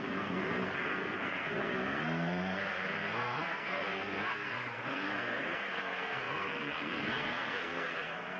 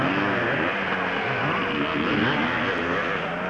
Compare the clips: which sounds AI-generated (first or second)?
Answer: first